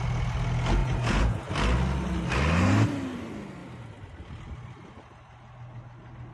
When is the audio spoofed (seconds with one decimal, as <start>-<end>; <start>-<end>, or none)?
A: 0.8-1.4